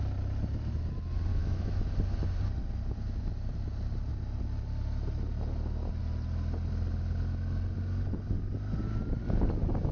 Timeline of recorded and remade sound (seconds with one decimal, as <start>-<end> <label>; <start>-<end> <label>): 0.0-1.3 recorded; 1.3-1.8 remade; 1.8-9.9 recorded